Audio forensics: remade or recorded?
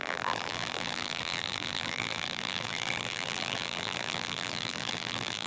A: remade